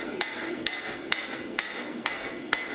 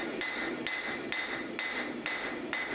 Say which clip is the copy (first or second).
first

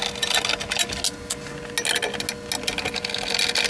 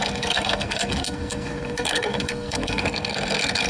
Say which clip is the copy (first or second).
second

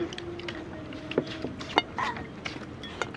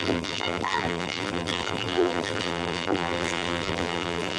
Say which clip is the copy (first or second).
second